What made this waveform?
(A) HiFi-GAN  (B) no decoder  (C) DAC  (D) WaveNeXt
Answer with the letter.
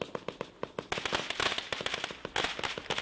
B